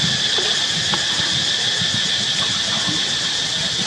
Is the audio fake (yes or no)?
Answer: no